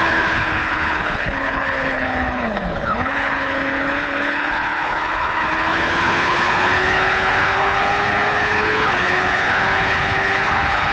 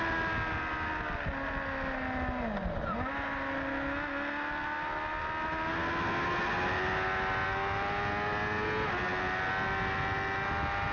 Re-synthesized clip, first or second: first